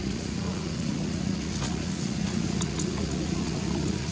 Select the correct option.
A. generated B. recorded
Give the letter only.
A